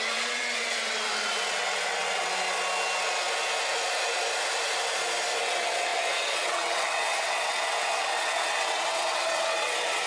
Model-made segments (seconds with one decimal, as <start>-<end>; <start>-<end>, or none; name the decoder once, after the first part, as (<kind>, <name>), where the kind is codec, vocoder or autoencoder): 0.0-2.3 (vocoder, WaveNeXt); 5.4-10.1